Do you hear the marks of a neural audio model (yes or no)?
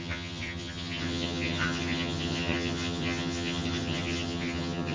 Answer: yes